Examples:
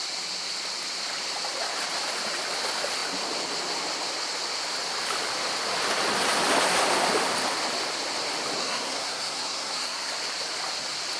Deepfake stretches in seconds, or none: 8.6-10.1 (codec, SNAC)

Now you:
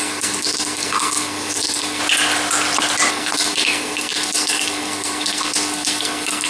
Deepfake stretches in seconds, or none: 0.0-2.0 (codec, SNAC); 3.1-6.5

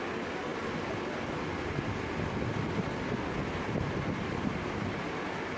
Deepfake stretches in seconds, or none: none

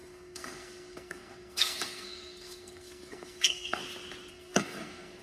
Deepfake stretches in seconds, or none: 0.0-3.8 (codec, SNAC); 4.3-5.2

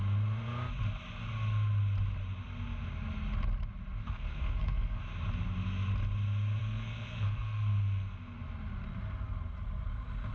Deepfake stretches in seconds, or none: 4.0-5.0 (codec, SNAC); 6.6-8.4

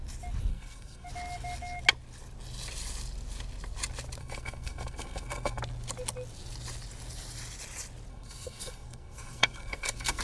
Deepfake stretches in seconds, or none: 0.5-1.1 (codec, SNAC); 4.2-5.6; 8.1-10.2